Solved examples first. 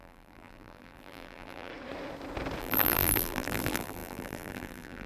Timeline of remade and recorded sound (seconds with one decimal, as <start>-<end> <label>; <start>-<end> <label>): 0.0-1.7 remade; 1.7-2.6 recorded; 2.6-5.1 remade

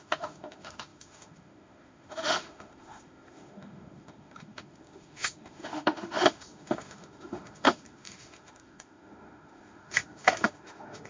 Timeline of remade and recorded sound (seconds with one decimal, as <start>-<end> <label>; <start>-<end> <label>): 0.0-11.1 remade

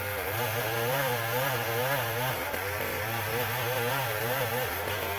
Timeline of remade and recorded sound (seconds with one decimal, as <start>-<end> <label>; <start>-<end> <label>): 0.0-1.8 remade; 1.8-2.3 recorded; 2.3-3.3 remade; 3.3-3.9 recorded; 3.9-5.2 remade

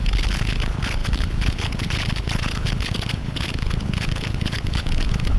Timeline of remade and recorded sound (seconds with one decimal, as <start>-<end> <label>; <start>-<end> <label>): 0.0-5.4 remade

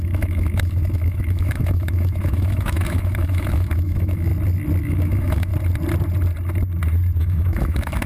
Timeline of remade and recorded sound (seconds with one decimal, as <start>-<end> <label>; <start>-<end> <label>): 0.0-4.3 remade; 4.3-4.8 recorded; 4.8-5.5 remade; 5.5-7.2 recorded; 7.2-8.1 remade